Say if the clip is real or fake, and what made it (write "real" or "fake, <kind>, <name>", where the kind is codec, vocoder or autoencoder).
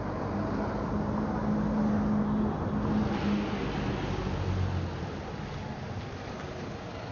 real